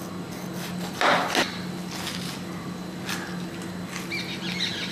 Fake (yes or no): no